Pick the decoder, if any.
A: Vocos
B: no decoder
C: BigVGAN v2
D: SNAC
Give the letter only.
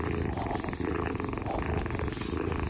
B